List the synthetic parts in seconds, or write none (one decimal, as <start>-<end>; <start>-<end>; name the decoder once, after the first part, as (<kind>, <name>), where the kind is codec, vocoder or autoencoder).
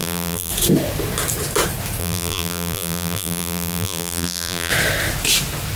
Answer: 0.0-0.5 (vocoder, BigVGAN v2); 2.0-4.7